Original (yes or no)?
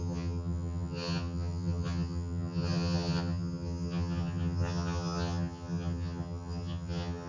no